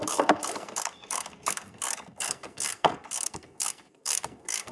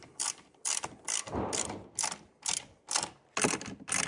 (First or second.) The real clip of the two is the second